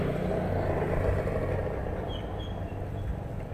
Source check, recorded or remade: recorded